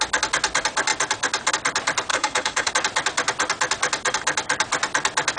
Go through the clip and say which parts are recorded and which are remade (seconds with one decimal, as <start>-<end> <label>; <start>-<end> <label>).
0.0-2.1 recorded; 2.1-2.7 remade; 2.7-5.4 recorded